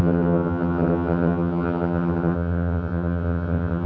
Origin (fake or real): fake